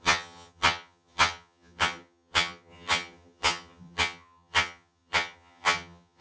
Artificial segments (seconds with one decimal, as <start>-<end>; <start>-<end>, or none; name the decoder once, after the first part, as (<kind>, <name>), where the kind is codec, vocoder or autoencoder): 0.0-6.2 (vocoder, HiFi-GAN)